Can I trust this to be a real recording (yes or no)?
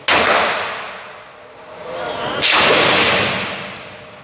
yes